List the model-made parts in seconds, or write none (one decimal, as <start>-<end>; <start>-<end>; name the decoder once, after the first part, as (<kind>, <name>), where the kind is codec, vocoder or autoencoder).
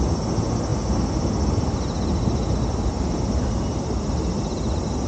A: none